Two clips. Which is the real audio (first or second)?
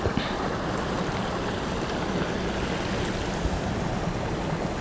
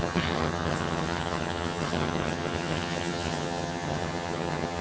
first